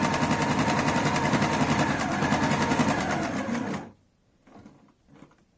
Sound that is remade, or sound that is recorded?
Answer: recorded